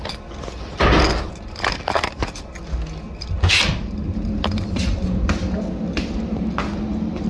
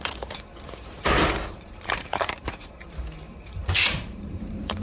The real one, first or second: first